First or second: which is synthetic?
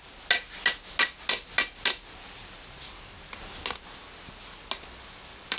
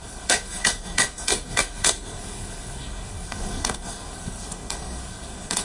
second